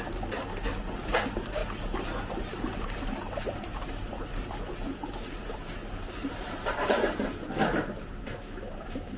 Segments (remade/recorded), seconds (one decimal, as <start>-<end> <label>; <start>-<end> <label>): 0.0-1.6 recorded; 1.6-4.6 remade; 4.6-6.2 recorded; 6.2-9.2 remade